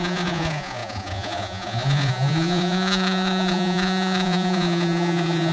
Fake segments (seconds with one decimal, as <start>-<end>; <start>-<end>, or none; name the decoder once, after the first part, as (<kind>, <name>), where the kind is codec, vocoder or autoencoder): 0.0-5.5 (vocoder, Vocos)